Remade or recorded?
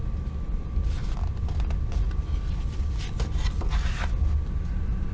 recorded